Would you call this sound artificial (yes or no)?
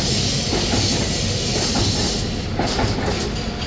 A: no